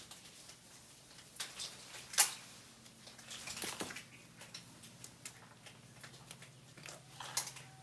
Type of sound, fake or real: real